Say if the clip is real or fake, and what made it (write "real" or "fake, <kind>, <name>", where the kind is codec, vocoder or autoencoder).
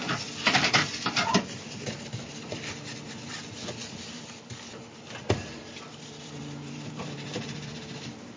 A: fake, vocoder, BigVGAN v2